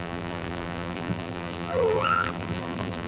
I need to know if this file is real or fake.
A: fake